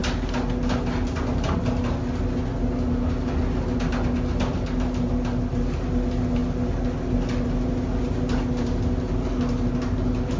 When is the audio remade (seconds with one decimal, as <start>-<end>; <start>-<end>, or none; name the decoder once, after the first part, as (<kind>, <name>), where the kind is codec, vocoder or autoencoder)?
none